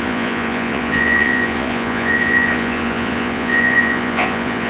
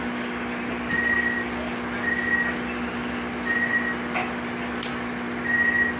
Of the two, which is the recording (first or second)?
second